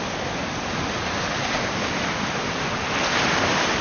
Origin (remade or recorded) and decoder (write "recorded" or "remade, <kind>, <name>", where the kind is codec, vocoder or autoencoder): recorded